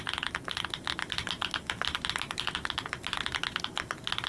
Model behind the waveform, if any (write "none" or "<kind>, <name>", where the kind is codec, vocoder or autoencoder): none